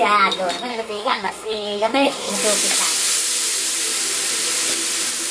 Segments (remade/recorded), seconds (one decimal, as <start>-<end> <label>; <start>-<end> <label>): 0.0-0.7 recorded; 0.7-2.3 remade; 2.3-5.3 recorded